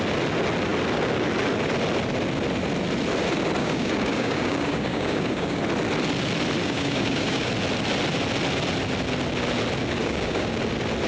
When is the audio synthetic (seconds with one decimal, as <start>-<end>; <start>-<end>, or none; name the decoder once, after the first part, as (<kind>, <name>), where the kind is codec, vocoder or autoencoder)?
3.6-5.6 (codec, DAC); 6.6-7.5; 10.0-10.6